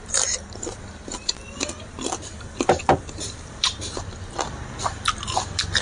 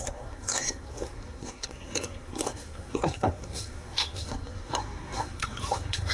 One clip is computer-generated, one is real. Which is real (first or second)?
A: first